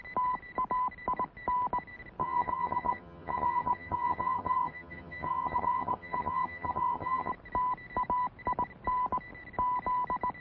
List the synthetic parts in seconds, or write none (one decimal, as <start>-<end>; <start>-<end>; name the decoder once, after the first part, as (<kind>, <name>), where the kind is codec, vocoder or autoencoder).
2.2-7.3 (vocoder, HiFi-GAN)